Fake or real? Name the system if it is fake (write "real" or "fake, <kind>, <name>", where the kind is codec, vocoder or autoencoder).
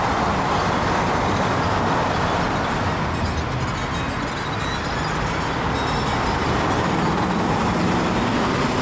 real